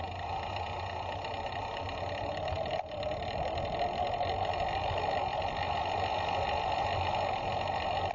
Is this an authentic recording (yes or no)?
yes